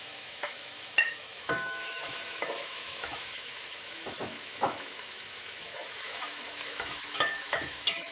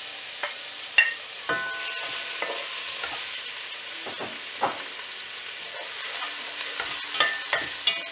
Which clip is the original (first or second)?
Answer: second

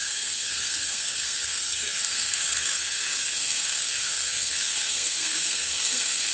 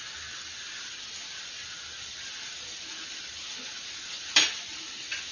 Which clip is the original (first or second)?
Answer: second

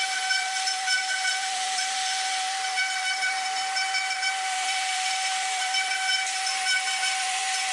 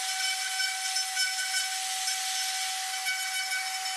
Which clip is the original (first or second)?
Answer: second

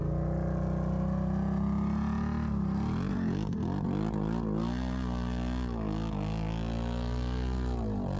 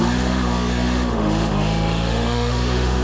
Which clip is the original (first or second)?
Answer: first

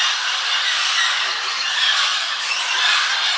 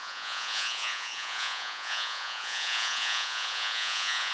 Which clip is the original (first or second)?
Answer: first